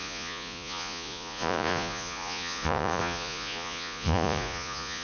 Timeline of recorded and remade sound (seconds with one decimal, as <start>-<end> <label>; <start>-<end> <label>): 0.0-5.0 remade